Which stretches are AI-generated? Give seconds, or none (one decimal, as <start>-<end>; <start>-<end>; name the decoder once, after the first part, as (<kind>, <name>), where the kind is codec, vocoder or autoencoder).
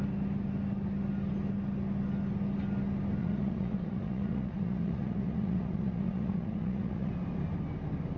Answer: 3.2-7.1 (vocoder, Vocos)